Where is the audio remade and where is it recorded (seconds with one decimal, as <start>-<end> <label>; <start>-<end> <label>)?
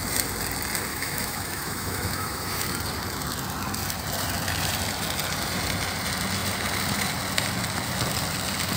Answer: 0.0-0.9 recorded; 0.9-2.7 remade; 2.7-8.8 recorded